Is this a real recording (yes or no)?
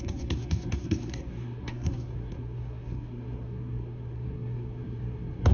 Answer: no